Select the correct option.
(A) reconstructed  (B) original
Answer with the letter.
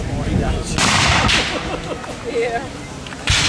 B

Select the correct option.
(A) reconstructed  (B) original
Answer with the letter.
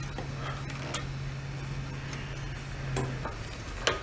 B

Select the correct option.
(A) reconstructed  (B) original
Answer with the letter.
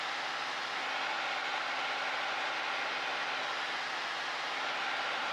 B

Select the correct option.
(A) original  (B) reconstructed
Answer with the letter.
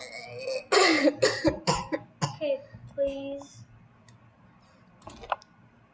A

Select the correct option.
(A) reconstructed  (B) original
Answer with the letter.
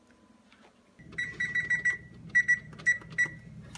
B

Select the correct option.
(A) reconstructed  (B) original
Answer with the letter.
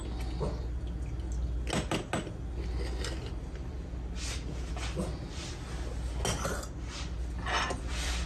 B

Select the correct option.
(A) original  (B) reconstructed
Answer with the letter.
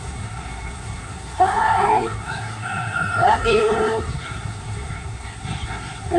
B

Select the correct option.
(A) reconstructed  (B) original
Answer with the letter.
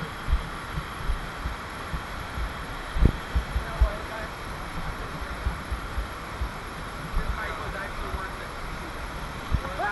A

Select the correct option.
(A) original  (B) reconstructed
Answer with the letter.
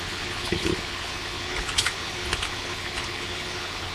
B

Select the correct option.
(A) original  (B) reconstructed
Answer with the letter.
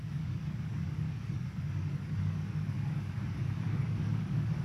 B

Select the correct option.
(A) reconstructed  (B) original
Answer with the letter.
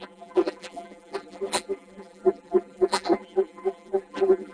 A